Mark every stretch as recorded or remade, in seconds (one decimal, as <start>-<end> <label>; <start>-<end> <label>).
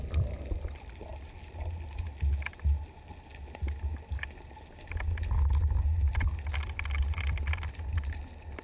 0.0-8.6 recorded